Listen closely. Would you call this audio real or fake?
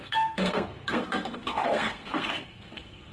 fake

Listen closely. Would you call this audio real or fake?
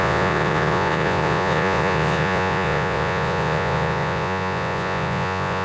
fake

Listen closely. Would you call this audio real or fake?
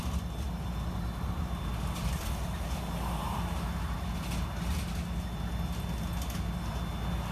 real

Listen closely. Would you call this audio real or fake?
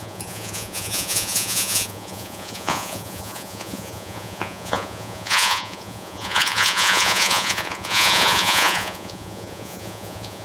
fake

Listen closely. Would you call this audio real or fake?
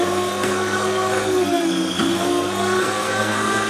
fake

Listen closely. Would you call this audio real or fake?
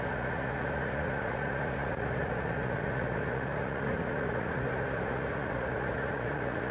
fake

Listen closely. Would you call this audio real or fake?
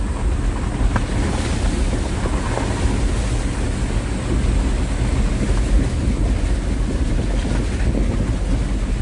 real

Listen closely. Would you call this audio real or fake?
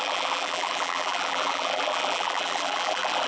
fake